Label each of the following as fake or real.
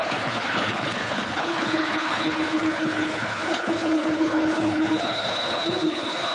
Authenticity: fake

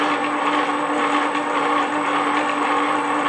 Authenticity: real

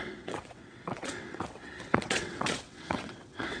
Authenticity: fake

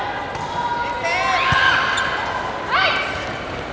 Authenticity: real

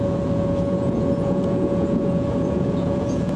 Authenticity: fake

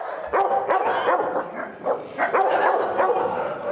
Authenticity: real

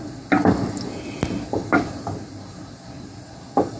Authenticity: real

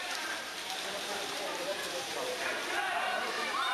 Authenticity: fake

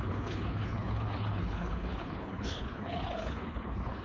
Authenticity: fake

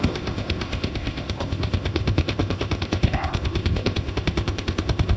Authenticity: fake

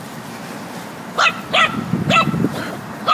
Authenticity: real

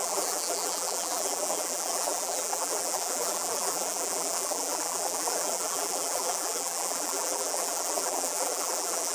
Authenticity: fake